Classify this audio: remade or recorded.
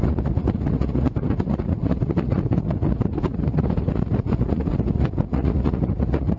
remade